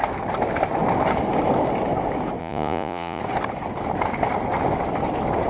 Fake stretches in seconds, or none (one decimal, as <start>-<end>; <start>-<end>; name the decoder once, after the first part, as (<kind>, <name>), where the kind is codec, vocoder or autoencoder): 2.4-3.2 (vocoder, Vocos)